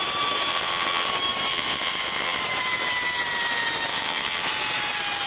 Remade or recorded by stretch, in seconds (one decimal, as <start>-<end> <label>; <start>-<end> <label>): 0.0-0.5 recorded; 0.5-1.1 remade; 1.1-1.5 recorded; 1.5-2.4 remade; 2.4-3.9 recorded; 3.9-4.5 remade; 4.5-5.3 recorded